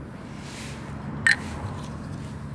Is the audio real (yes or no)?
yes